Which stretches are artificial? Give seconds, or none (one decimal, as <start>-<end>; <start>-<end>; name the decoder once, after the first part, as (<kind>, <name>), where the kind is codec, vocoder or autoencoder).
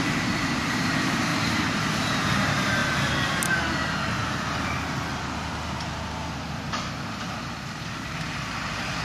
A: 0.0-1.3 (vocoder, BigVGAN v2); 2.1-2.8; 7.8-9.0